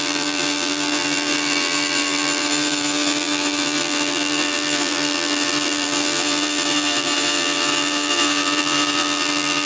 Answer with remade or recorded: remade